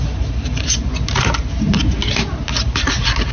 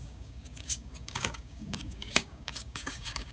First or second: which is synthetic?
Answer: second